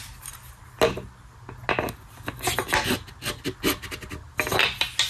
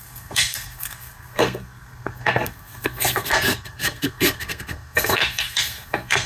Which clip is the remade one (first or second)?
second